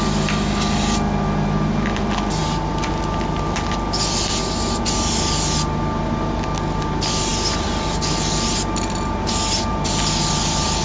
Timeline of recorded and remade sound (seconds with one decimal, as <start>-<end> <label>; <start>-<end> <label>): 0.0-10.8 recorded